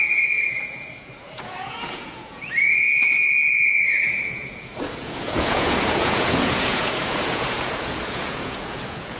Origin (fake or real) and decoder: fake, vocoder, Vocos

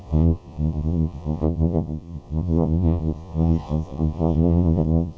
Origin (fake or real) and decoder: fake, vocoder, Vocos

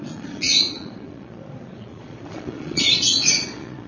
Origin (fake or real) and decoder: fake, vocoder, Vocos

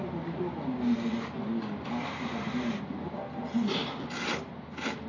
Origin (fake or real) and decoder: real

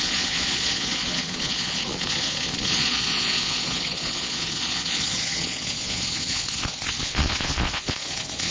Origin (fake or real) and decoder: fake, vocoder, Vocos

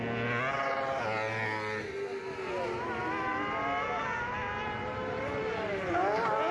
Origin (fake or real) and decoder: real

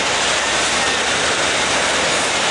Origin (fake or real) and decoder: real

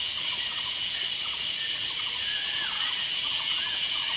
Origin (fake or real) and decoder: fake, vocoder, Vocos